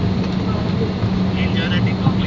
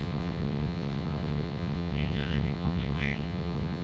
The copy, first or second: second